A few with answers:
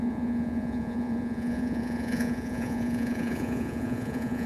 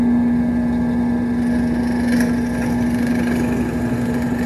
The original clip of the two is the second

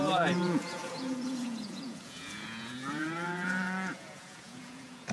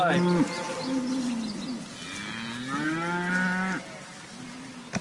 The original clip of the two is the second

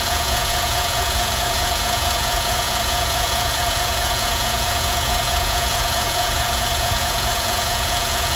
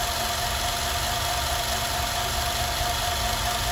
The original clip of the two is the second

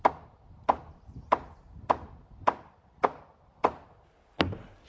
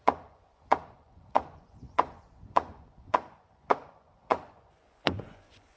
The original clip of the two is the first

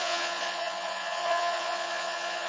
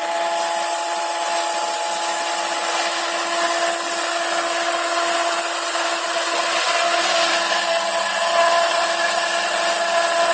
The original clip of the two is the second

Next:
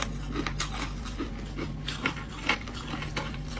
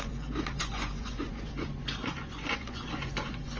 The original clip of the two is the first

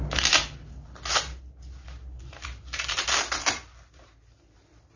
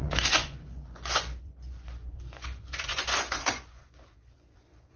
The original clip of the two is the first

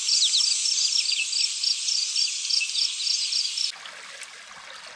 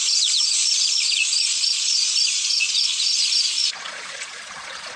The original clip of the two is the first